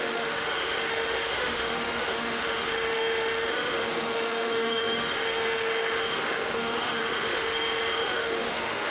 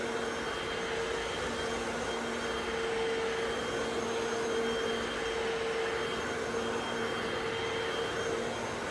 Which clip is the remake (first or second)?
first